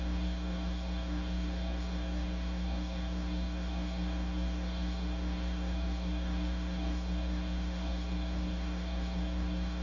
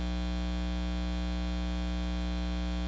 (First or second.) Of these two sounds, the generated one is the first